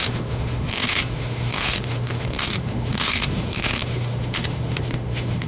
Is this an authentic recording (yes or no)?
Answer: no